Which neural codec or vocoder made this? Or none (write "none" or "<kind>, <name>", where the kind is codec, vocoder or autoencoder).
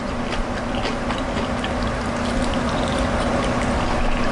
vocoder, BigVGAN v2